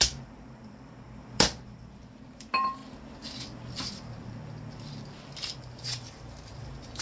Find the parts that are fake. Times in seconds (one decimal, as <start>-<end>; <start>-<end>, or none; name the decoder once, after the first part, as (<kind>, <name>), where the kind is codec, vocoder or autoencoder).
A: 0.0-2.8 (vocoder, BigVGAN v2); 5.6-7.0